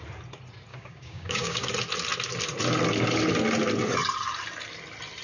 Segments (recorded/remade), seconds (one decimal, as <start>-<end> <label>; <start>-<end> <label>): 0.0-0.7 recorded; 0.7-1.7 remade; 1.7-5.2 recorded